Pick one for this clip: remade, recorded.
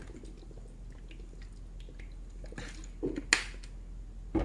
recorded